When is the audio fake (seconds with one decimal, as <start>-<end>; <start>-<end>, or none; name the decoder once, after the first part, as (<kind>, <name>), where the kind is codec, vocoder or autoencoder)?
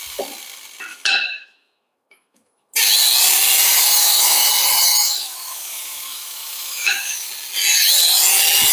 0.9-2.7 (autoencoder, DAC-VAE); 4.0-4.5; 4.9-7.3